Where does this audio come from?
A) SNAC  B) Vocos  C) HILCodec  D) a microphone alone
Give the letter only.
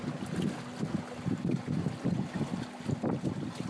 D